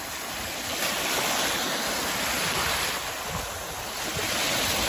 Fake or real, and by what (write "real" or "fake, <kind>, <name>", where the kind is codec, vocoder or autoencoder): real